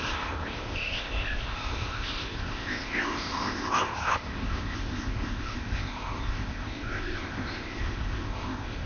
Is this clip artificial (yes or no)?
yes